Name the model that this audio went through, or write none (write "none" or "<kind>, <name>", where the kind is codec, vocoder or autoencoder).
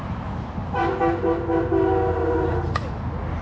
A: none